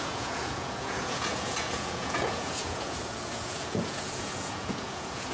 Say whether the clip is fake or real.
fake